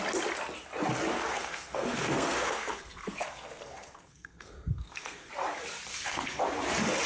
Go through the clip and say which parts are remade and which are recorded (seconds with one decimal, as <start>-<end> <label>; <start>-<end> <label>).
0.0-1.3 recorded; 1.3-5.3 remade; 5.3-5.9 recorded; 5.9-6.4 remade; 6.4-7.1 recorded